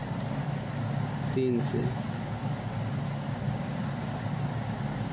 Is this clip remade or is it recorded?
recorded